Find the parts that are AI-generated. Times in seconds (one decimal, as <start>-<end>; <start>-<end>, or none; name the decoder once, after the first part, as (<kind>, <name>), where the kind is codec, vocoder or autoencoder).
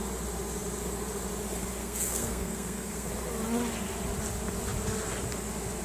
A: 1.8-3.1 (codec, SNAC)